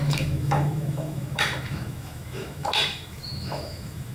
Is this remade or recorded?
remade